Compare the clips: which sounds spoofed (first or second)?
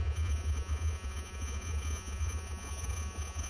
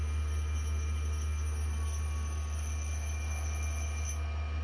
first